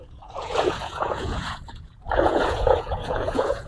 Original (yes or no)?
no